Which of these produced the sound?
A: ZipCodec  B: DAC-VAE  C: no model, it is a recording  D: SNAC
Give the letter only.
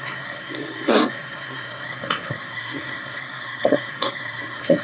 D